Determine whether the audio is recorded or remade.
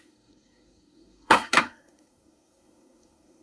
remade